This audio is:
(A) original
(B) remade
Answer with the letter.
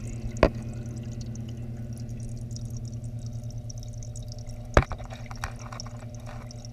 A